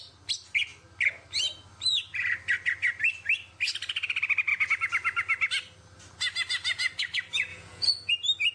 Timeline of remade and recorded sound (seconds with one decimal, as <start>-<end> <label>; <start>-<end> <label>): 0.0-7.5 recorded; 7.5-8.1 remade; 8.1-8.5 recorded